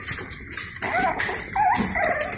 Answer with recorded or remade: recorded